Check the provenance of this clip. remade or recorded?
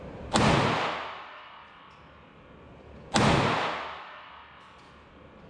recorded